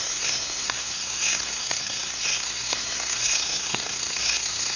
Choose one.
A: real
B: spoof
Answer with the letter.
B